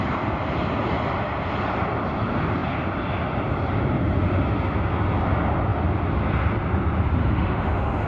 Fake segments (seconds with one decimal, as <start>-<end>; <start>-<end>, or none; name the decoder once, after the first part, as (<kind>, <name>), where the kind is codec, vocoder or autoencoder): 7.2-8.1 (autoencoder, DAC-VAE)